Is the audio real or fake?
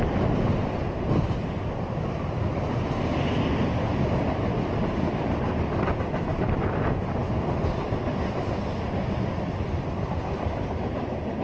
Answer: real